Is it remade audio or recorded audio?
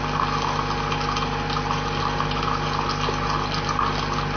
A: recorded